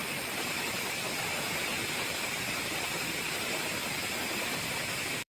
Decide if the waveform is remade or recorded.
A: remade